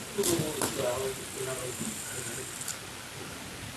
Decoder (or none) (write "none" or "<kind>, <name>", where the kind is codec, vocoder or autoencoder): none